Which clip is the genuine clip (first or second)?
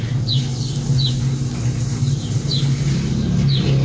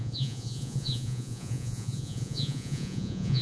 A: first